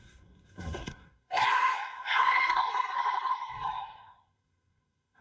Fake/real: fake